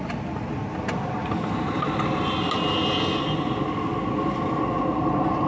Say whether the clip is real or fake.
real